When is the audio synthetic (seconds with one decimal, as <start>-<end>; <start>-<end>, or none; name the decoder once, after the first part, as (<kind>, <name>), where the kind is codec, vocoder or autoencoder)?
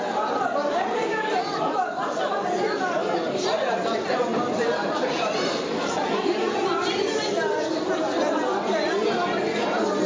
4.3-6.5 (vocoder, BigVGAN v2); 9.6-10.1